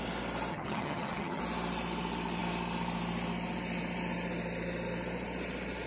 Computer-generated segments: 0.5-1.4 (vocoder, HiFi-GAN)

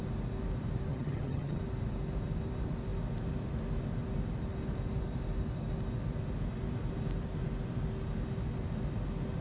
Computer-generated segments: 0.9-1.6 (vocoder, HiFi-GAN)

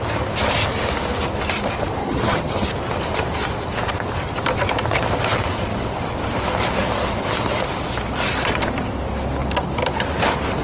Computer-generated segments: 2.0-2.7 (vocoder, HiFi-GAN)

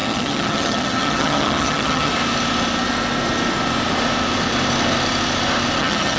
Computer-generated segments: 0.0-2.1 (vocoder, HiFi-GAN); 5.8-6.2

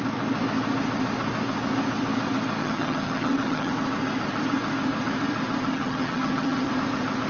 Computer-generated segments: 2.6-3.7 (vocoder, HiFi-GAN); 5.7-6.7

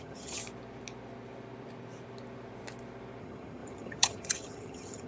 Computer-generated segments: 0.0-0.4 (vocoder, HiFi-GAN); 3.2-5.1

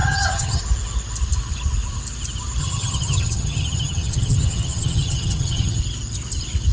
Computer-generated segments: 0.0-0.6 (vocoder, HiFi-GAN); 2.6-5.8

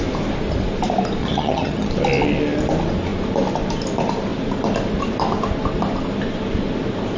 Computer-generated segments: 1.2-1.9 (vocoder, HiFi-GAN)